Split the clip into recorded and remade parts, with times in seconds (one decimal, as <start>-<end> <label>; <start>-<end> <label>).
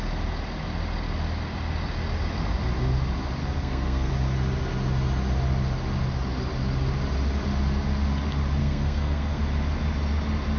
0.0-3.4 recorded; 3.4-4.1 remade; 4.1-8.6 recorded; 8.6-9.4 remade; 9.4-10.6 recorded